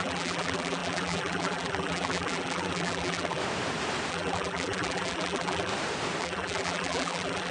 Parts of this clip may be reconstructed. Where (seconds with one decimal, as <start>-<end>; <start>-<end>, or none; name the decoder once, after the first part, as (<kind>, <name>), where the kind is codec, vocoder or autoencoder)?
0.0-3.4 (vocoder, BigVGAN v2); 4.1-5.7; 6.2-7.5